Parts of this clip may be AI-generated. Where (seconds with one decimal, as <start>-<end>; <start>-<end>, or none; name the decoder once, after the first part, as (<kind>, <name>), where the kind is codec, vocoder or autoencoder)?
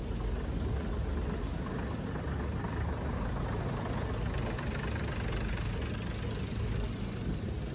none